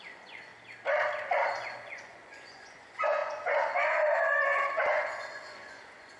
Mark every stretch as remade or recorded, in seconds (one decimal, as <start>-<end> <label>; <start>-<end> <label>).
0.0-0.5 remade; 0.5-1.5 recorded; 1.5-6.2 remade

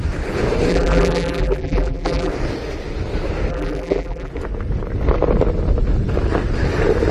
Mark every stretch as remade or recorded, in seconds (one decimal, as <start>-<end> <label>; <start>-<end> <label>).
0.0-0.7 recorded; 0.7-2.3 remade; 2.3-3.5 recorded; 3.5-4.3 remade; 4.3-7.1 recorded